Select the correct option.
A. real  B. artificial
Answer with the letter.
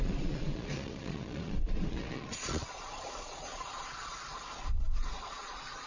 B